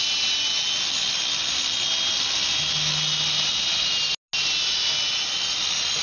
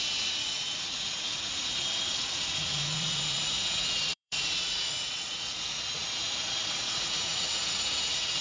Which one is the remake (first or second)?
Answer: second